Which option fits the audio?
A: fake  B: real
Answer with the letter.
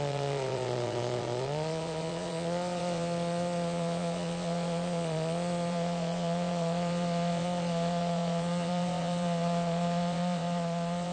A